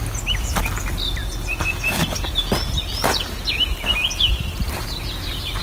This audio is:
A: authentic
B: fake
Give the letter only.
A